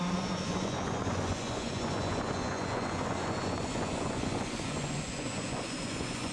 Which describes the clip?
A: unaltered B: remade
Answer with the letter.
B